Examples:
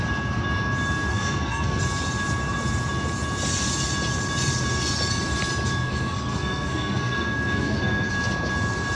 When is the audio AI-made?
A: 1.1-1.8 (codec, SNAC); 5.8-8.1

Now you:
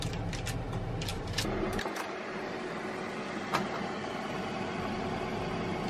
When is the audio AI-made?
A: 1.1-2.7 (vocoder, BigVGAN v2)

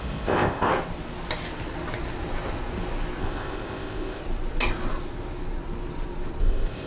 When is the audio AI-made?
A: 0.0-0.7 (codec, ZipCodec); 3.2-4.2; 6.4-6.9

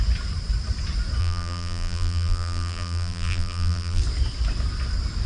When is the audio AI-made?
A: 1.2-4.0 (vocoder, BigVGAN v2)

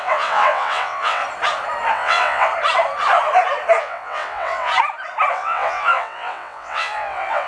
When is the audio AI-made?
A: 0.0-1.2 (vocoder, WaveNeXt); 1.9-2.5; 3.8-4.7; 5.3-7.5

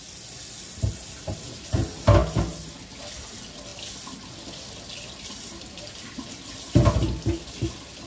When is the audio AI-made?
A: none

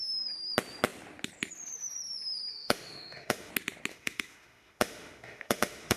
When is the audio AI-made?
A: 2.5-3.5 (autoencoder, DAC-VAE); 3.9-6.0